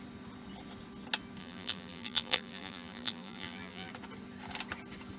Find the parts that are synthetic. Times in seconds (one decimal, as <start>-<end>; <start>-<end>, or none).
1.4-3.9

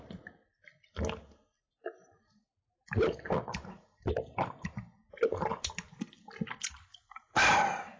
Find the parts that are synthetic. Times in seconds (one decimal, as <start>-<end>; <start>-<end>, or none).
2.0-5.1

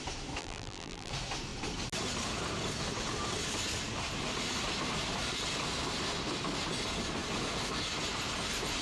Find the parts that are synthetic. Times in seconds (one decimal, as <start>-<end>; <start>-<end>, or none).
0.4-1.1

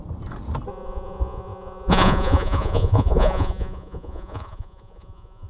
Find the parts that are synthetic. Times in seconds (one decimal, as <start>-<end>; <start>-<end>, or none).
0.7-5.5